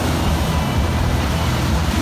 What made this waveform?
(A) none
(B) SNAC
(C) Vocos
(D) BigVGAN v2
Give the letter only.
A